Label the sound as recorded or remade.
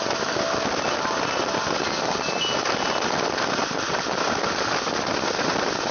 recorded